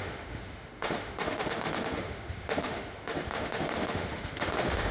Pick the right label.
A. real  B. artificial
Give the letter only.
B